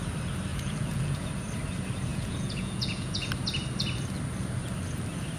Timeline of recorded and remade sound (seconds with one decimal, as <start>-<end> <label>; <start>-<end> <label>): 0.0-0.5 recorded; 0.5-1.3 remade; 1.3-2.1 recorded; 2.1-3.3 remade; 3.3-5.4 recorded